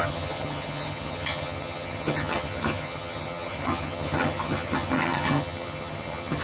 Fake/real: fake